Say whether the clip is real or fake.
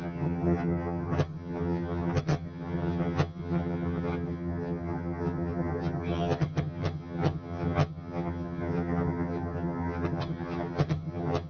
fake